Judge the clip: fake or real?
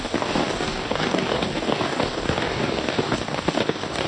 fake